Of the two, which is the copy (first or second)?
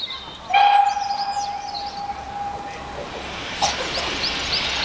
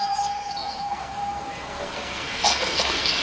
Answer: second